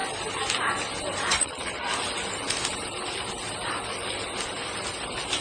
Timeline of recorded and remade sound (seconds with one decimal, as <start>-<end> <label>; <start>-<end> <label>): 0.0-1.3 recorded; 1.3-1.9 remade; 1.9-5.4 recorded